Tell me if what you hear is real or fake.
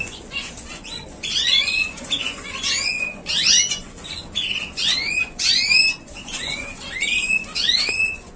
fake